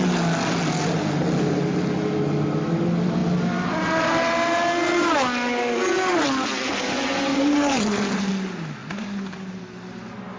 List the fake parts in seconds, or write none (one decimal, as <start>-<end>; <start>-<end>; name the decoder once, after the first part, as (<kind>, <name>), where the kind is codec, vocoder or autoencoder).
7.3-8.3 (vocoder, BigVGAN v2); 8.8-9.6